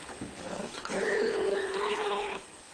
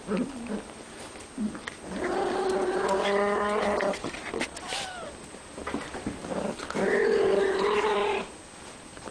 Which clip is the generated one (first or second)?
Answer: first